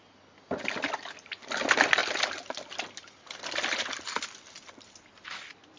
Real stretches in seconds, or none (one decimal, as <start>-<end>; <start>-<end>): 0.0-5.8